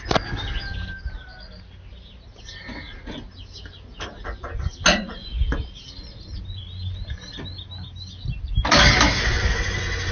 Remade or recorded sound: recorded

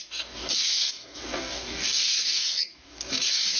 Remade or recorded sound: remade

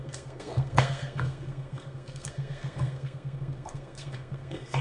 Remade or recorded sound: remade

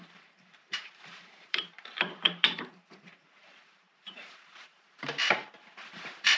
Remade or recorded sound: remade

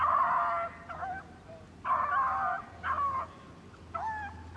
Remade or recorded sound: recorded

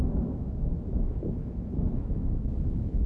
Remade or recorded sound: remade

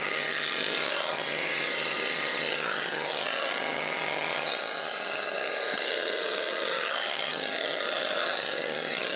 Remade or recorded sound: remade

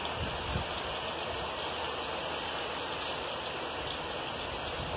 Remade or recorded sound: recorded